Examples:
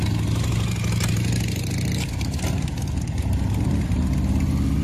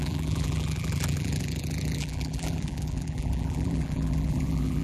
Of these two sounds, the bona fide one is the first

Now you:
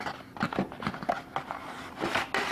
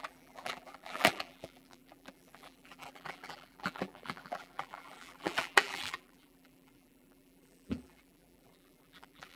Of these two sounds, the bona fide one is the first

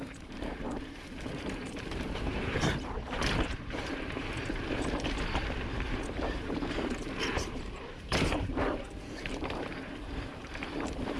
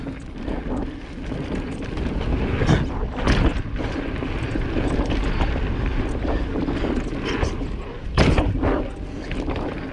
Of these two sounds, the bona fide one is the second